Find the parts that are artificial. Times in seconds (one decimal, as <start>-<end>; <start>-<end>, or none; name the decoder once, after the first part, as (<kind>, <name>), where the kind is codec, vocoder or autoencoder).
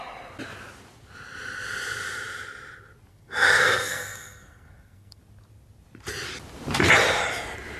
3.1-5.2 (codec, SNAC)